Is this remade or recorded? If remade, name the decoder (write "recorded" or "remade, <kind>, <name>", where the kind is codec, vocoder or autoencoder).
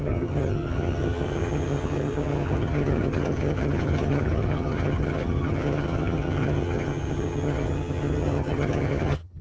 remade, vocoder, HiFi-GAN